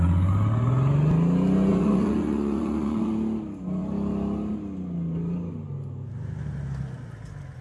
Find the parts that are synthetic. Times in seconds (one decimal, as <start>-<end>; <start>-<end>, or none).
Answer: 1.7-3.1